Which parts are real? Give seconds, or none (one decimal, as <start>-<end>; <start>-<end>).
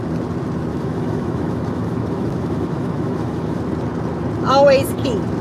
0.0-0.7; 3.6-5.4